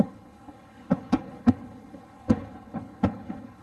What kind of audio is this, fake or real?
fake